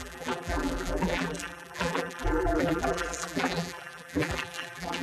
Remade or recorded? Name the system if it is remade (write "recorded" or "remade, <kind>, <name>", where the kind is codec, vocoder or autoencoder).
remade, vocoder, BigVGAN v2